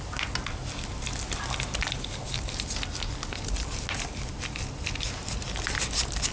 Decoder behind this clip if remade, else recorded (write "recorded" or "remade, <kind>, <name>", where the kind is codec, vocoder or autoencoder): recorded